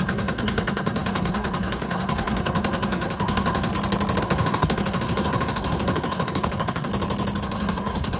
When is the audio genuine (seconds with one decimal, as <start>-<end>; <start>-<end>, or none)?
3.7-4.2; 6.9-7.4